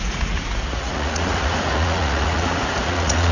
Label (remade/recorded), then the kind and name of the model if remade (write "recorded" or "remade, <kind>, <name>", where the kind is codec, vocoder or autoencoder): remade, vocoder, Vocos